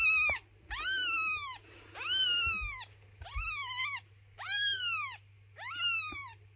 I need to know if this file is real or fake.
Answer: real